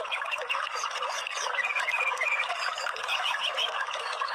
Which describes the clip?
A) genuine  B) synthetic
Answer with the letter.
B